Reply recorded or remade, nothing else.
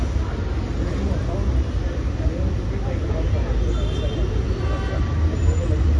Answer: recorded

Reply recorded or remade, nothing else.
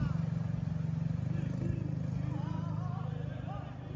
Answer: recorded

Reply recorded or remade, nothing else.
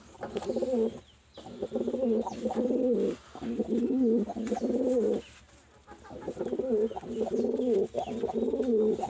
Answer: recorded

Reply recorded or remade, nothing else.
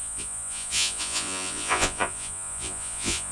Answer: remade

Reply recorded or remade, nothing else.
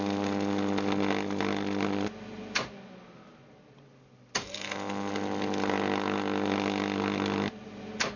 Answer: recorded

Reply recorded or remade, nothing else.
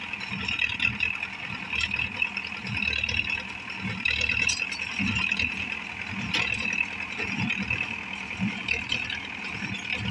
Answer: recorded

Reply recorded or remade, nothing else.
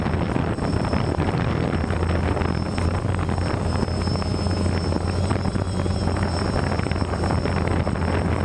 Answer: remade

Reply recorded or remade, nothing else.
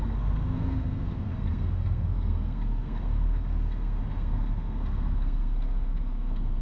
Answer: remade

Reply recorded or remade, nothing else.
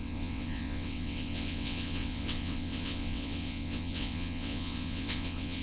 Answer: remade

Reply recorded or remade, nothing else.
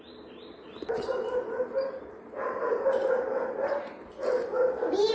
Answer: remade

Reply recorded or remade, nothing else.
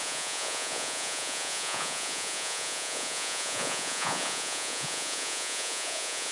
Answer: remade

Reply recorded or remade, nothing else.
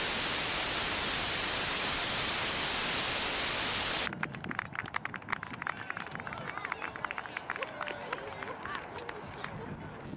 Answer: recorded